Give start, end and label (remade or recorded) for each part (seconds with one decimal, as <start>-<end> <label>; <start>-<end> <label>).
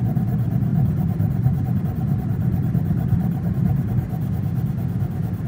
0.0-2.3 recorded; 2.3-3.9 remade; 3.9-5.5 recorded